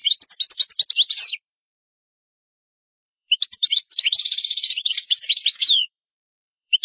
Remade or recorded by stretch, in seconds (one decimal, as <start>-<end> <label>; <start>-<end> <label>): 0.0-1.1 recorded; 1.1-6.8 remade